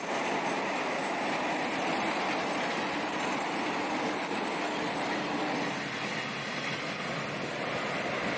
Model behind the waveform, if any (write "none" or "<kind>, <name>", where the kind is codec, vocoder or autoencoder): none